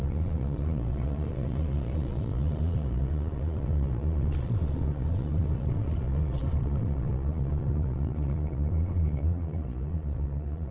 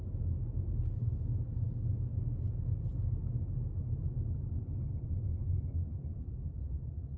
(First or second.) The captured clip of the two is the second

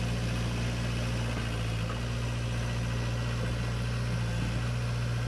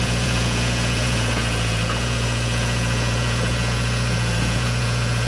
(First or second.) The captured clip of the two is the first